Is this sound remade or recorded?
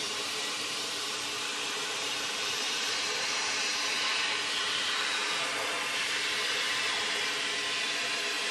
remade